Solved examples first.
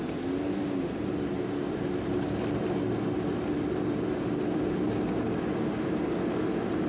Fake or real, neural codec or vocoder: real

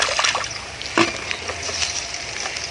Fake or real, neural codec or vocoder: real